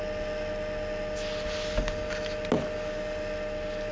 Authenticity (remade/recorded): recorded